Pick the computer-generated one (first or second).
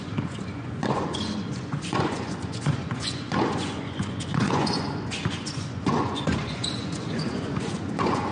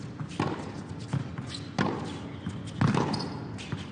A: first